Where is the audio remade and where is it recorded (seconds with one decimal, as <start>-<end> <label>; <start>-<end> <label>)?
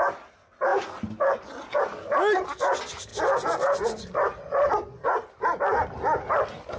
0.0-6.8 recorded